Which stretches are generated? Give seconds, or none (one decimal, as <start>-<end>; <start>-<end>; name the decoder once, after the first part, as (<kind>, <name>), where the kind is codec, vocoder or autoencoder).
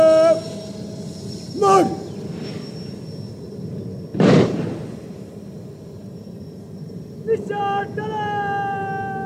4.1-7.6 (vocoder, BigVGAN v2)